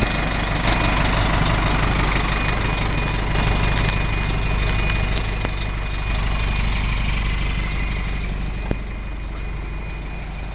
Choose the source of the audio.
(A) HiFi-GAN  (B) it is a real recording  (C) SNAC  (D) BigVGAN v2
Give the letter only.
B